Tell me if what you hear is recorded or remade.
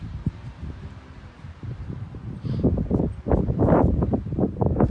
remade